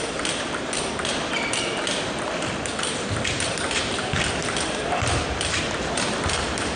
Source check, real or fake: fake